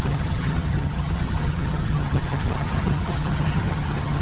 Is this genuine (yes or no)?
no